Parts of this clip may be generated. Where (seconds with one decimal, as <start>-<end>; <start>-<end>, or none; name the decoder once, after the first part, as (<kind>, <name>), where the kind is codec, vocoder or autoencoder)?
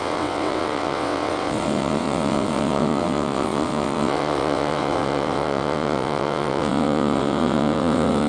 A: 0.0-8.3 (vocoder, WaveNeXt)